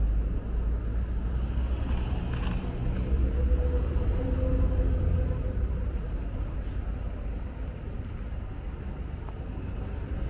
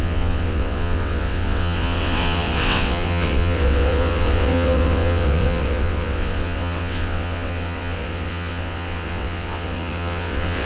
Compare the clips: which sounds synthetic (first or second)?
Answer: second